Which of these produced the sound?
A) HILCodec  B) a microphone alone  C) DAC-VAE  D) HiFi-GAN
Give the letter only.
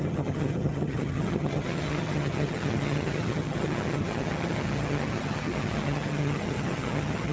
D